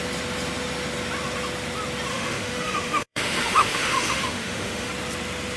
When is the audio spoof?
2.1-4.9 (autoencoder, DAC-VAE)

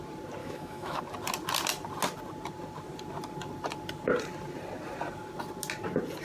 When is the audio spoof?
0.4-1.0 (autoencoder, DAC-VAE)

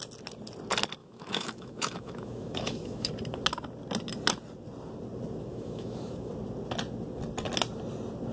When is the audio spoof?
1.0-3.1 (autoencoder, DAC-VAE); 5.5-6.3

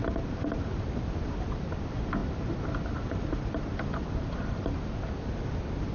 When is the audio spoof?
none